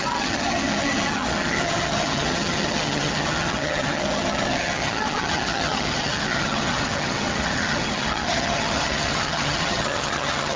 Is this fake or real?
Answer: fake